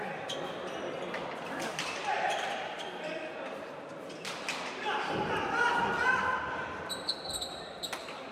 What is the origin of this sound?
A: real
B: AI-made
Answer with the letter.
A